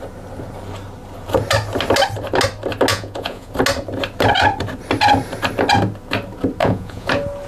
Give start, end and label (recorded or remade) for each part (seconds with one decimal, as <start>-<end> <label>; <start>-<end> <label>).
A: 0.0-2.9 recorded; 2.9-3.5 remade; 3.5-6.6 recorded; 6.6-7.1 remade; 7.1-7.5 recorded